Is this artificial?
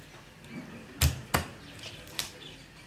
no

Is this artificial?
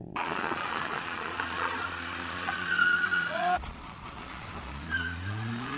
yes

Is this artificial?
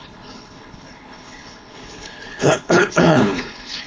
yes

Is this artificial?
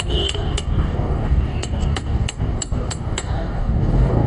yes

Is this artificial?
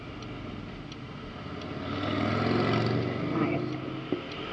no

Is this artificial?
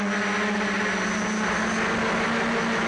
no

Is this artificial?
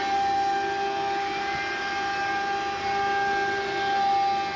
no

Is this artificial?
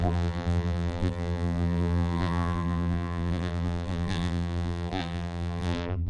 yes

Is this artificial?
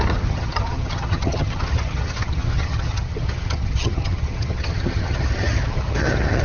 yes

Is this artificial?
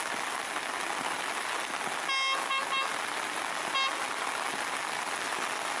no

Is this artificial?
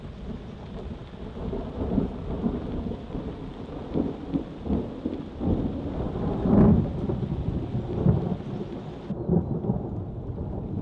no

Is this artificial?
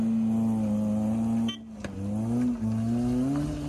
no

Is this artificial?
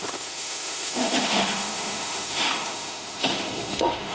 yes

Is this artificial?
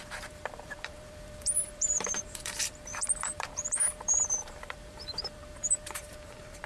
yes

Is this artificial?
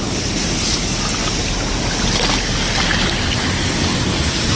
no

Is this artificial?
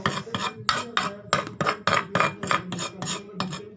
no